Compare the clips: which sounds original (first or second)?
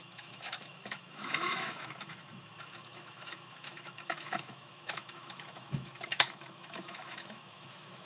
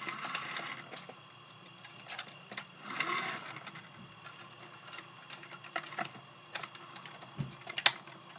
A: second